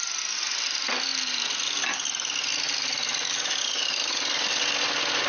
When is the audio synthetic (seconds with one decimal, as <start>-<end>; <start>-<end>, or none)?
none